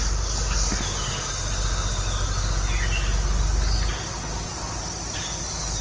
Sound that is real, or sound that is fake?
real